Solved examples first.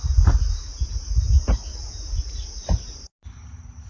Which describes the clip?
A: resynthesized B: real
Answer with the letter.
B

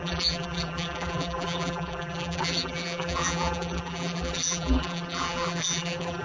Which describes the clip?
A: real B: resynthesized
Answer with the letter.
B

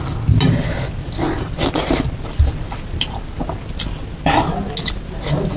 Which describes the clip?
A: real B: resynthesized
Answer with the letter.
A